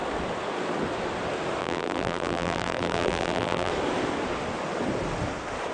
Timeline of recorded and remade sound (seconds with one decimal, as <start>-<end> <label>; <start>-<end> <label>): 0.0-1.6 recorded; 1.6-3.7 remade; 3.7-5.7 recorded